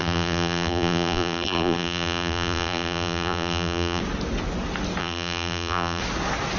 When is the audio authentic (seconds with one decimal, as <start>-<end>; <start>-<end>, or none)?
4.0-5.0; 6.0-6.6